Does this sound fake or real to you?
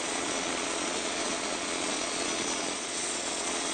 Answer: fake